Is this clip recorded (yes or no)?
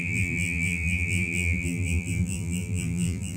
no